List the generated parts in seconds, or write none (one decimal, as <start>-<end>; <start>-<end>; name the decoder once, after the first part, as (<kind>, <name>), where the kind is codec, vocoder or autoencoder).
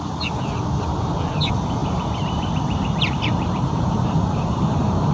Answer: 1.8-5.1 (vocoder, BigVGAN v2)